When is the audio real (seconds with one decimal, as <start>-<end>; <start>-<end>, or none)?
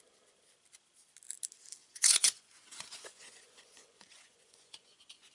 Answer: 0.0-1.8